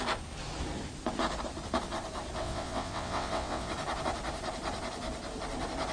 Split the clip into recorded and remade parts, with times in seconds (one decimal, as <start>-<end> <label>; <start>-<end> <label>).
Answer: 0.0-2.4 recorded; 2.4-3.7 remade; 3.7-5.9 recorded